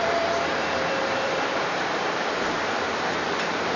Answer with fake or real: fake